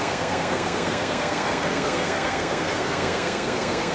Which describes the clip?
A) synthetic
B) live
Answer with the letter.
A